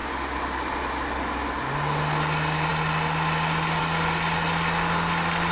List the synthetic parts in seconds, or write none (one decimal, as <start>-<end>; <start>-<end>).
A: none